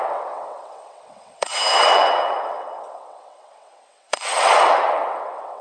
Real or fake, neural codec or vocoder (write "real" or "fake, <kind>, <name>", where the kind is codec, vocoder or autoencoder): fake, vocoder, WaveNeXt